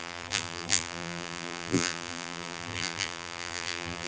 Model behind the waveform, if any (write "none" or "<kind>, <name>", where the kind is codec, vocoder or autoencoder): vocoder, BigVGAN v2